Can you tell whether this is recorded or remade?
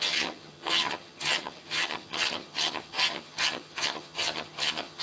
remade